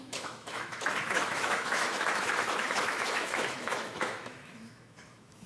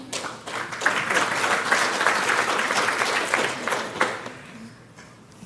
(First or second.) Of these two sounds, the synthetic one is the first